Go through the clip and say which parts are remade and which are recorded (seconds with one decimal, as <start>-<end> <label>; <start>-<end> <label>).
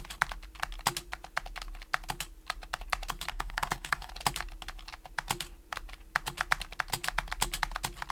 0.0-3.3 recorded; 3.3-4.1 remade; 4.1-8.1 recorded